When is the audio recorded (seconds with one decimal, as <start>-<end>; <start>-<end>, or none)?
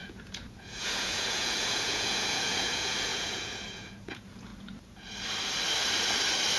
4.5-6.6